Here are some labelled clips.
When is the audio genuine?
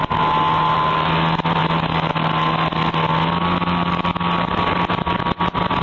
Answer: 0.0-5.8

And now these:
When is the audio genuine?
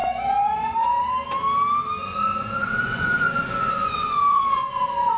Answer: 1.1-2.0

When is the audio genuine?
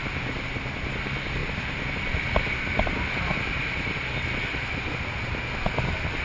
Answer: 0.0-6.2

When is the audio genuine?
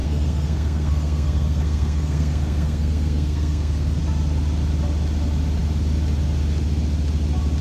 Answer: 4.0-7.6